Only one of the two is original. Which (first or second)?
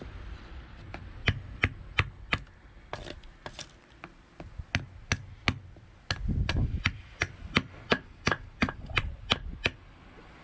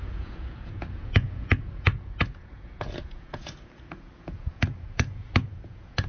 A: first